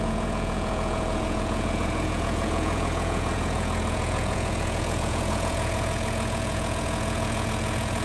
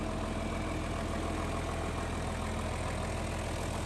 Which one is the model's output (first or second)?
first